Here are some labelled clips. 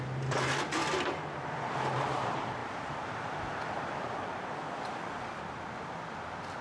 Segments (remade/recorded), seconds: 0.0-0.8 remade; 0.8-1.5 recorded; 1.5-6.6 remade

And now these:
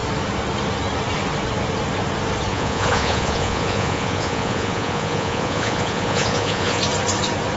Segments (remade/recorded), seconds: 0.0-2.5 recorded; 2.5-6.8 remade; 6.8-7.6 recorded

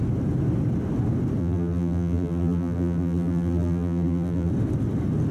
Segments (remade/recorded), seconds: 0.0-1.4 recorded; 1.4-4.5 remade; 4.5-5.3 recorded